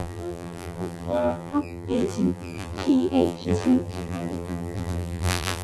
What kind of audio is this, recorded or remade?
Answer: remade